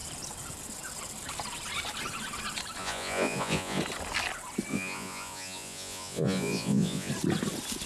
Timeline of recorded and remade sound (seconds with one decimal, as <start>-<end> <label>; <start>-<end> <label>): 0.0-2.8 recorded; 2.8-3.8 remade; 3.8-4.7 recorded; 4.7-7.1 remade; 7.1-7.9 recorded